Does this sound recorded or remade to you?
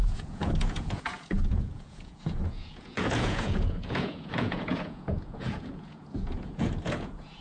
remade